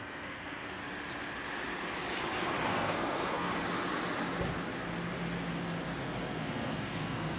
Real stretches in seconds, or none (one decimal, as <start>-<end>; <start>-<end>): 0.8-2.7; 3.5-6.0